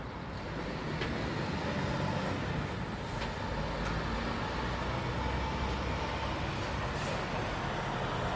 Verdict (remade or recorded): recorded